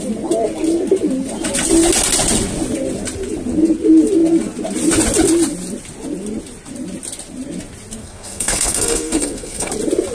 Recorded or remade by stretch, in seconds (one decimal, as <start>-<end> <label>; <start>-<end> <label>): 0.0-8.0 recorded; 8.0-9.7 remade; 9.7-10.1 recorded